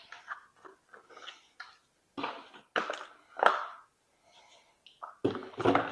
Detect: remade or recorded recorded